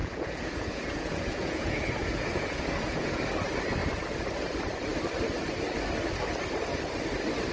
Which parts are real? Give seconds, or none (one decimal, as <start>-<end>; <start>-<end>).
3.2-7.5